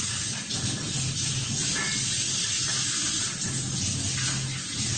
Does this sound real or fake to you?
real